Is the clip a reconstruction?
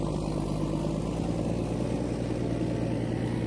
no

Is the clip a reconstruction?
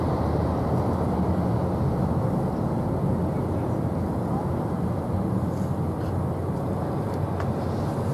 no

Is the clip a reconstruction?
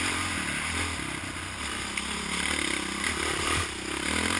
no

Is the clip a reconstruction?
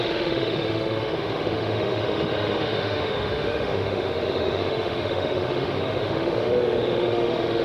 yes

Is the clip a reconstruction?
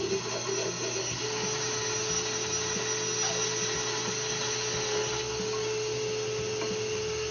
no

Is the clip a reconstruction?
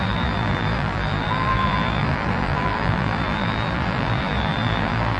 yes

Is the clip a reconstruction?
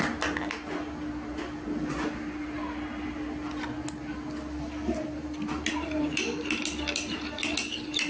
no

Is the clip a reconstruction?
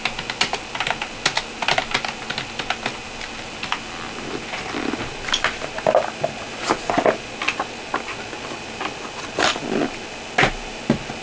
no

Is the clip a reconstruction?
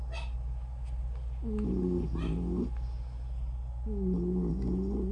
no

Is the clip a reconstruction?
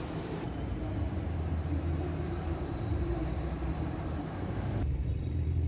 yes